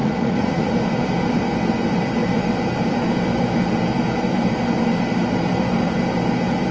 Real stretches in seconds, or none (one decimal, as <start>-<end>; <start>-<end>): 0.7-6.7